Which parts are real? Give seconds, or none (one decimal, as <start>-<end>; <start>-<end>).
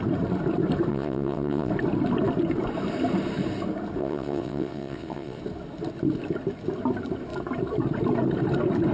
0.0-0.9; 1.7-4.0; 5.4-8.9